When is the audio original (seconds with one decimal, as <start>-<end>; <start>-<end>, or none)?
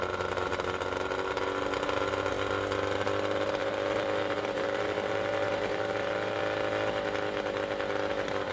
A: 0.0-3.6; 6.4-8.5